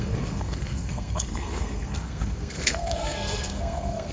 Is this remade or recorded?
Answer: remade